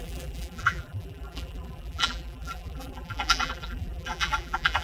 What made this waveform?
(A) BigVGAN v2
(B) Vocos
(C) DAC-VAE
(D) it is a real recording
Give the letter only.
A